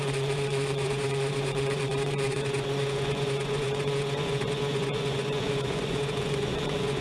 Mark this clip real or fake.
fake